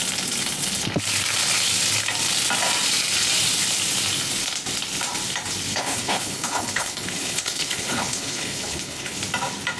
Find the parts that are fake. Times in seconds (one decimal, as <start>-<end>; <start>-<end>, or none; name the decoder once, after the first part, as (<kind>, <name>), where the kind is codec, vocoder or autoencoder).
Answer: 5.7-9.2 (codec, HILCodec)